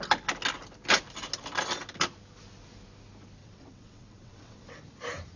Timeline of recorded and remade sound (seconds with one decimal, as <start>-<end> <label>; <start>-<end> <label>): 0.0-3.4 recorded; 3.4-4.8 remade; 4.8-5.4 recorded